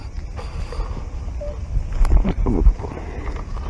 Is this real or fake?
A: real